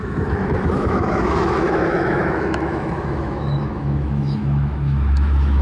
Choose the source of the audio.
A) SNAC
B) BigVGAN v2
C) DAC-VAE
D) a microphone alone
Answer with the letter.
C